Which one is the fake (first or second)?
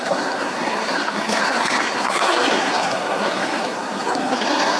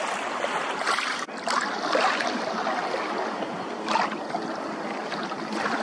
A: first